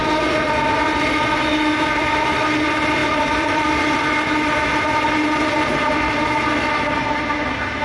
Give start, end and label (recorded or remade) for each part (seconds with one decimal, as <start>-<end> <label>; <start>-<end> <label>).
0.0-3.0 recorded; 3.0-4.0 remade; 4.0-7.8 recorded